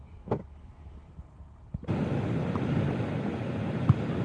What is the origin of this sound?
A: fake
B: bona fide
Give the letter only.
B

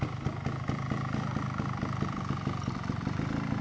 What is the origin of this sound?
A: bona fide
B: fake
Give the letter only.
A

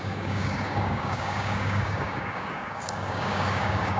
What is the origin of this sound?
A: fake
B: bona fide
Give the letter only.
A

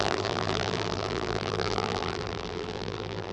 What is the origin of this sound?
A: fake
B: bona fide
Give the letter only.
A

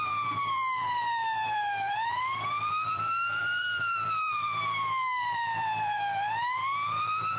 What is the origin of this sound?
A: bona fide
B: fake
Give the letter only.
B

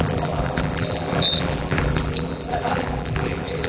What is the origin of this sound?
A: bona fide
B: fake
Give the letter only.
B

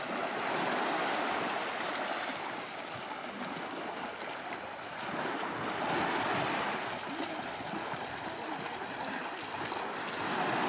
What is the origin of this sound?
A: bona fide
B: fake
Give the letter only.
A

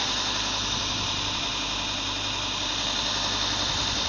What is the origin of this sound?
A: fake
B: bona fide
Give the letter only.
B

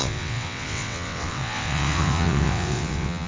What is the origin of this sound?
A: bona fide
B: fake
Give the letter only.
B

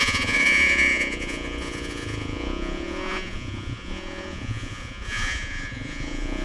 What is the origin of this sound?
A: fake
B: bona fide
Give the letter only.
A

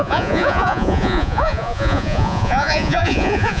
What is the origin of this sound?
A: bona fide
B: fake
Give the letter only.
B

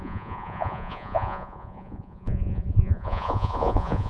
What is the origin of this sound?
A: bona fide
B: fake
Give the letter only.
B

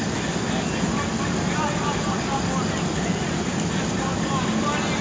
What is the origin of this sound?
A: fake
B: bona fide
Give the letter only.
B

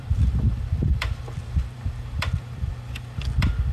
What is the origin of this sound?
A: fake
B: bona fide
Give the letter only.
A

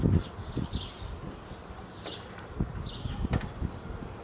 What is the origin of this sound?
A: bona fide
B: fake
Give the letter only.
A